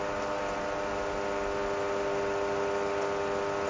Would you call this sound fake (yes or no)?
no